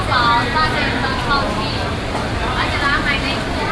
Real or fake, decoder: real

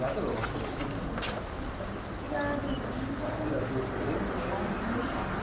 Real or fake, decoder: real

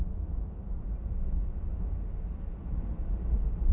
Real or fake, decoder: real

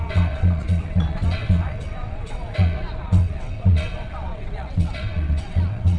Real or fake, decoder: fake, vocoder, WaveNeXt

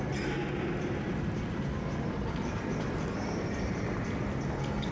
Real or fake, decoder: real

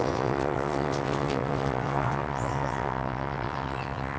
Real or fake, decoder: fake, vocoder, WaveNeXt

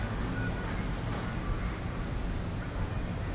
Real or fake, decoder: real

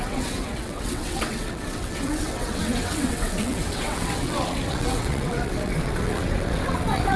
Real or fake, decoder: fake, vocoder, WaveNeXt